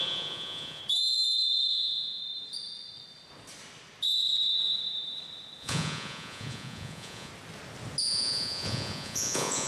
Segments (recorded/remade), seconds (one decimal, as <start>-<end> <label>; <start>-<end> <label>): 0.0-0.8 remade; 0.8-1.7 recorded; 1.7-2.2 remade; 2.2-5.6 recorded; 5.6-7.3 remade; 7.3-8.0 recorded; 8.0-9.7 remade

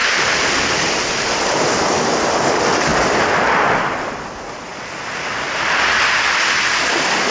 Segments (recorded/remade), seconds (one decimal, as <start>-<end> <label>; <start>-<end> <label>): 0.0-7.3 recorded